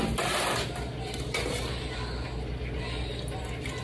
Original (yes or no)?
yes